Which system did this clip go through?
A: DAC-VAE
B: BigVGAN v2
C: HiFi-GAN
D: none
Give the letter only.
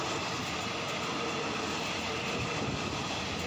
D